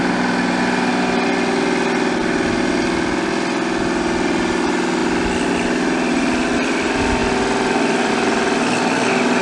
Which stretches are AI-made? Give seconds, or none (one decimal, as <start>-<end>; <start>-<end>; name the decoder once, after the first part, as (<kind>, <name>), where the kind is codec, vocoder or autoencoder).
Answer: none